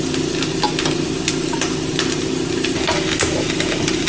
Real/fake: real